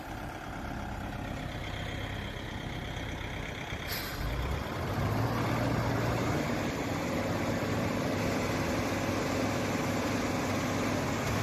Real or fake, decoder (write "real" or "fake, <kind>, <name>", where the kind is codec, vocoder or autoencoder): real